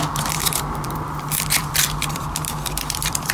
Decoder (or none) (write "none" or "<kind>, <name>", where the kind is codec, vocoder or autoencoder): vocoder, BigVGAN v2